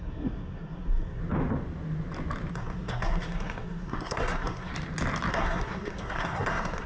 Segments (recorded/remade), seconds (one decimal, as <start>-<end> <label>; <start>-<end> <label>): 0.0-1.2 remade; 1.2-2.5 recorded; 2.5-4.7 remade; 4.7-5.3 recorded; 5.3-6.9 remade